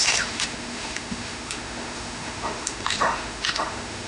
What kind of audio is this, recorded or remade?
remade